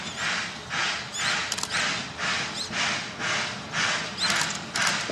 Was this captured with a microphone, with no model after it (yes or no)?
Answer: yes